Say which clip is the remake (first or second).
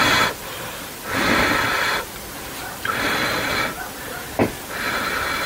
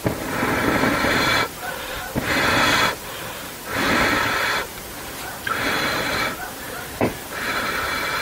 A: second